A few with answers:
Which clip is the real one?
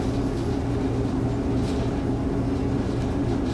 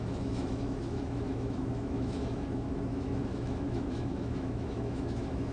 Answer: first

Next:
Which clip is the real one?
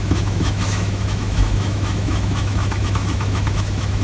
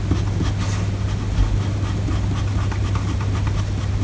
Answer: second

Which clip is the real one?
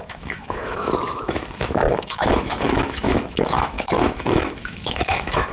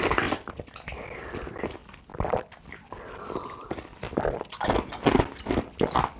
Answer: second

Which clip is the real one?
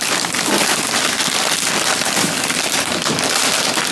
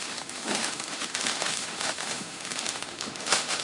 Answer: first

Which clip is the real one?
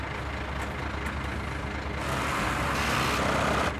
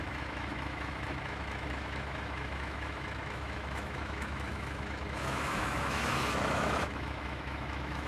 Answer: first